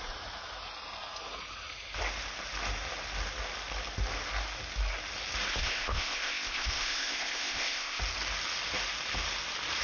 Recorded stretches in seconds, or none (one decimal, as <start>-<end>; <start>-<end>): 0.0-5.5; 8.0-9.8